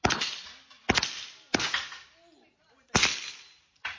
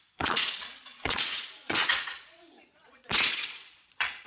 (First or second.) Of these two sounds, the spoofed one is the second